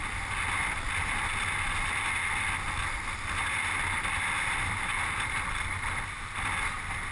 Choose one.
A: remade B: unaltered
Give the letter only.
B